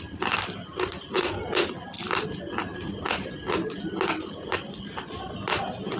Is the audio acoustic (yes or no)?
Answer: yes